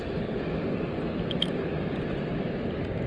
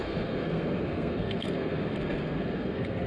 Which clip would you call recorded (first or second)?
first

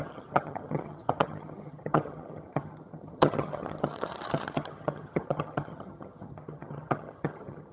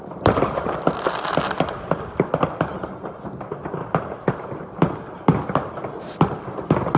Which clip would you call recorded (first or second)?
second